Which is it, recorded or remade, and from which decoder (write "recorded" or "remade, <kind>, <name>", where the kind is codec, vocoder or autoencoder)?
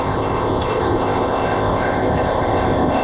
remade, codec, ZipCodec